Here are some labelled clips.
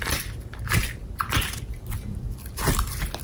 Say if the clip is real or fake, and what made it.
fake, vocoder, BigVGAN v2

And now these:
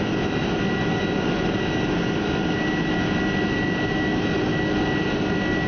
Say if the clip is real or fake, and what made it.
real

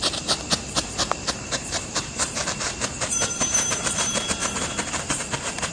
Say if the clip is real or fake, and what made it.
fake, vocoder, BigVGAN v2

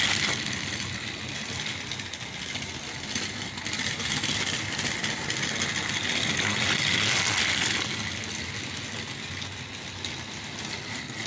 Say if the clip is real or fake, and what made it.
real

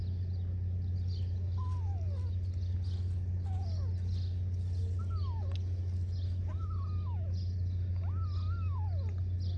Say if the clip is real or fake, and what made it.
real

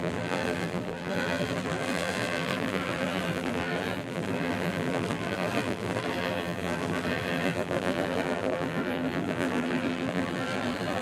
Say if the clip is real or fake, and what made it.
fake, vocoder, BigVGAN v2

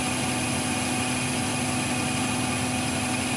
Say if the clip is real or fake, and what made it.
real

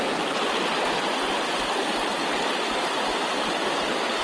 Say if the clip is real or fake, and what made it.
real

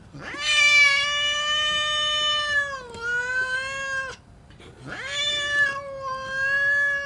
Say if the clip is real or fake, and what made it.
real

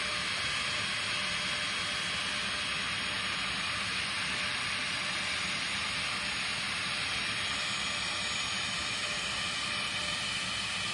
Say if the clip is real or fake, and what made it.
real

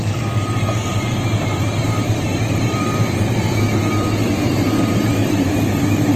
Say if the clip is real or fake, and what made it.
fake, vocoder, BigVGAN v2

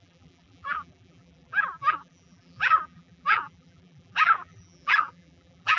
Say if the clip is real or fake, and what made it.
fake, vocoder, BigVGAN v2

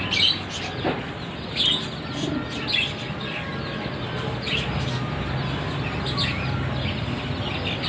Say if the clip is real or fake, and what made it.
real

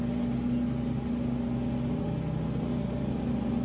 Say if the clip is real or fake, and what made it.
real